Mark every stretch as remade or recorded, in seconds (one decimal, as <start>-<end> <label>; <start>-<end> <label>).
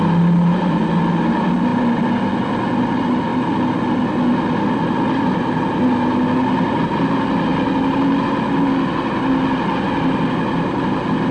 0.0-11.3 recorded